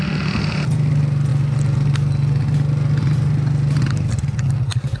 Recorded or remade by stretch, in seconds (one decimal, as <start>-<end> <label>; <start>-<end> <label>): 0.0-5.0 recorded